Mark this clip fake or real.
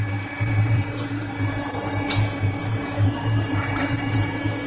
fake